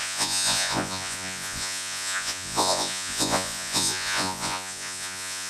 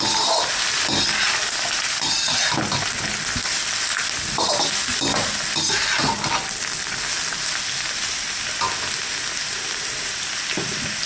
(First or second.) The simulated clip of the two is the first